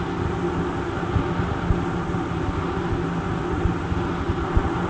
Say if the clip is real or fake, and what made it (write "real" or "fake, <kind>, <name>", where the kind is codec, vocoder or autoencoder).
real